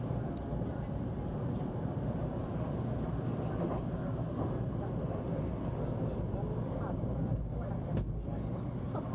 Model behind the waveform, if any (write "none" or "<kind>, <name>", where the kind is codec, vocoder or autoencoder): none